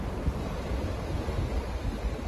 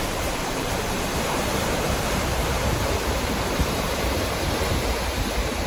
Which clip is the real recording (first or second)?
first